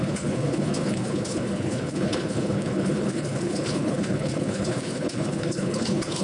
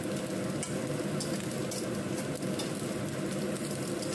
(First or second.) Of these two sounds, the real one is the second